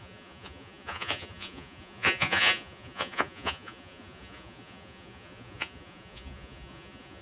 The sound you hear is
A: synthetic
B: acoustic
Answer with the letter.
A